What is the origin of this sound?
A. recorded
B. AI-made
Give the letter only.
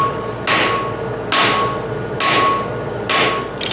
A